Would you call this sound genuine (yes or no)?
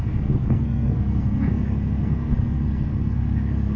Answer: no